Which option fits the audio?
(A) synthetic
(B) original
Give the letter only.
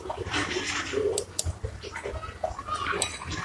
B